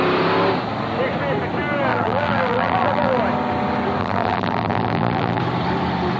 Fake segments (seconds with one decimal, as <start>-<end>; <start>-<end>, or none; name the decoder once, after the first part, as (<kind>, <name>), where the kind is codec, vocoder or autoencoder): 1.9-3.2 (vocoder, BigVGAN v2); 4.0-5.4